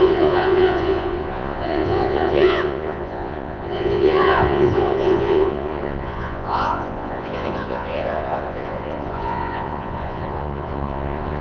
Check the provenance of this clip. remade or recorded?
remade